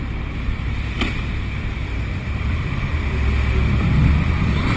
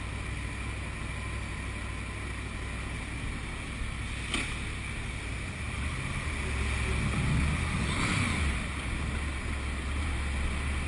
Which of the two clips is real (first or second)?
second